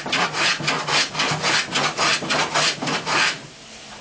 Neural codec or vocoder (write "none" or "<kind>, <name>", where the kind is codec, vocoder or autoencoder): none